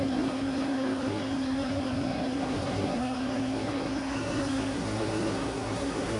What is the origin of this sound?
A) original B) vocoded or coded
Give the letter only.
B